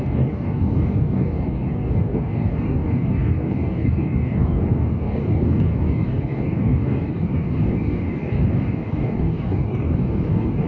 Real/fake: fake